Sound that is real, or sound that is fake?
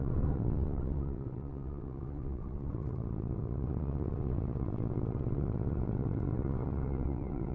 fake